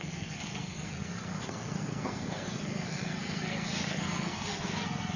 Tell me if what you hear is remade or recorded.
remade